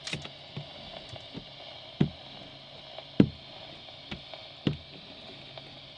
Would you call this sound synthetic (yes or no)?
no